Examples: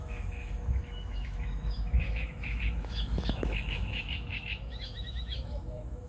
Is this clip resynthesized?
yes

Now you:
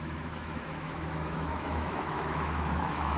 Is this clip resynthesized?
yes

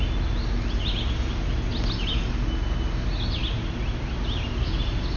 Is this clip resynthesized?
no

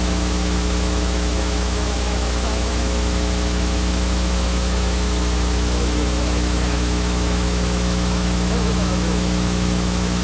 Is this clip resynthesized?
yes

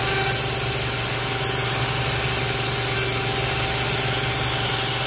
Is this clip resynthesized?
no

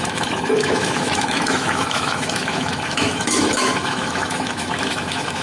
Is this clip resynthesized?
yes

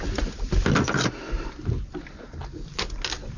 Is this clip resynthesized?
no